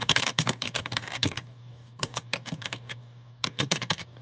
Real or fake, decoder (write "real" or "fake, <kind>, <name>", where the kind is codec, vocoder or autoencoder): fake, codec, DAC